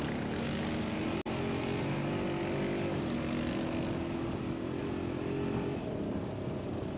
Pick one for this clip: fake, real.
real